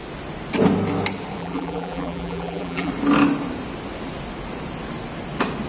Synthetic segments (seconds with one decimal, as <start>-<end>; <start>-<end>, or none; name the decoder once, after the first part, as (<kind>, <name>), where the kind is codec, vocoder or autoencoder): 1.4-2.9 (vocoder, BigVGAN v2)